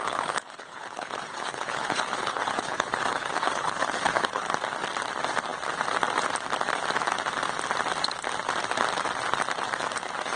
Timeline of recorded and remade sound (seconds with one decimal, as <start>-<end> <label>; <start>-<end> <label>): 0.0-4.5 remade; 4.5-10.4 recorded